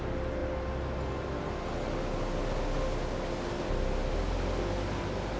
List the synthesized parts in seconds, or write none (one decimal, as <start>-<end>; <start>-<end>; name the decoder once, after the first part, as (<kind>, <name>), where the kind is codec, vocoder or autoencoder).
none

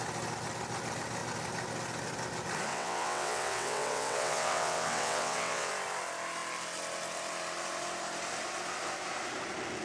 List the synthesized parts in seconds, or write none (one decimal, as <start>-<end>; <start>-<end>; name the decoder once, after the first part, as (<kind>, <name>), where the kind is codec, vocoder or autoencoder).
2.7-5.7 (vocoder, WaveNeXt)

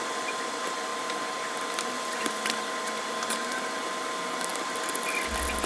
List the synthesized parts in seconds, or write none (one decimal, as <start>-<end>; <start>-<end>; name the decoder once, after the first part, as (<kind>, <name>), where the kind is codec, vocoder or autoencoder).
none

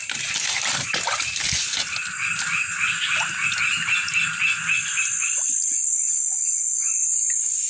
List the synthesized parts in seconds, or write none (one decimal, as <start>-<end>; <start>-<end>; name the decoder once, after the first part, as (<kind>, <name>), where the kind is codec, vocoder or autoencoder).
none

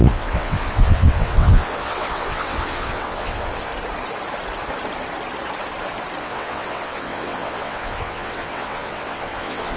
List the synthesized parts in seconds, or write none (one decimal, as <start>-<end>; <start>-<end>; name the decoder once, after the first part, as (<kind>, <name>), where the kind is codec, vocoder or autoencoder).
0.0-3.7 (vocoder, WaveNeXt); 6.2-9.8